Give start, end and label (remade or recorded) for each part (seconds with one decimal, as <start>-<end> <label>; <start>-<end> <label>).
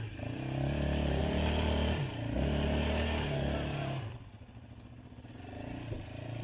0.0-1.2 recorded; 1.2-2.0 remade; 2.0-6.4 recorded